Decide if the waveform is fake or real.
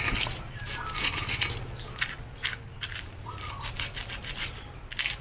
real